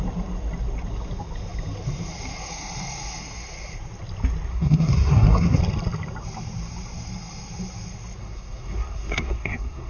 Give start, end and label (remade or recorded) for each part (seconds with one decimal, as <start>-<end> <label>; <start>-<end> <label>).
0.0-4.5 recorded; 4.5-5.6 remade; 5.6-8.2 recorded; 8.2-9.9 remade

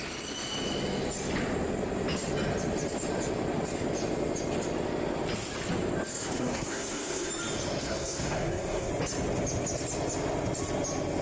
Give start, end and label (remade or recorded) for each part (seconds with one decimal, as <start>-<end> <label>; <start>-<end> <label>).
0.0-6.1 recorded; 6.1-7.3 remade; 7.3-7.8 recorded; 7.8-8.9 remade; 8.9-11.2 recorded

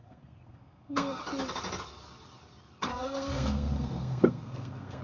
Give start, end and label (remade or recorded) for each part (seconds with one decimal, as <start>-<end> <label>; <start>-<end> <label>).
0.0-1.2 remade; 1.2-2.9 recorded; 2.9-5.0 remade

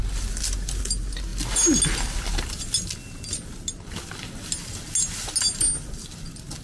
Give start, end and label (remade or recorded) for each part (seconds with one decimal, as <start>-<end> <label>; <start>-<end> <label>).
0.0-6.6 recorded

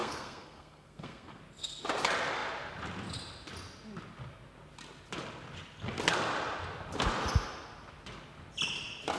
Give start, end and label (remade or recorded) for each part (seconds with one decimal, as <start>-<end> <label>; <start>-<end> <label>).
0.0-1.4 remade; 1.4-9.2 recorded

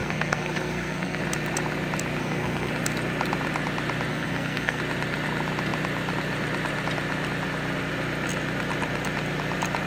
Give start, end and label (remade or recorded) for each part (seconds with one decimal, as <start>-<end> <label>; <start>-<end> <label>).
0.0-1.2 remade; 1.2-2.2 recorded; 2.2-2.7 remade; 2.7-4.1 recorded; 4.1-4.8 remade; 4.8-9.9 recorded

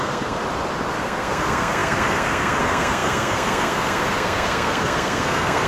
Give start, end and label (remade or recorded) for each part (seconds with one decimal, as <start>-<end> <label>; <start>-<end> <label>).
0.0-0.4 remade; 0.4-1.0 recorded; 1.0-5.7 remade

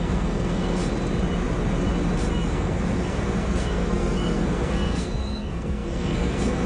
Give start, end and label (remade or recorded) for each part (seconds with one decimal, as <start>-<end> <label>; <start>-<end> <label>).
0.0-0.8 remade; 0.8-2.3 recorded; 2.3-6.7 remade